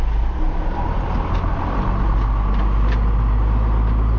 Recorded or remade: recorded